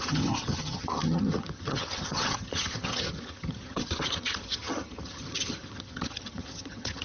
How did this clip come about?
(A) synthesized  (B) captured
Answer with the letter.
A